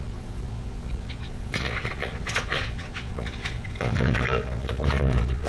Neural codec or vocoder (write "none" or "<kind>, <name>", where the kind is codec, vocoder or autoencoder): vocoder, Vocos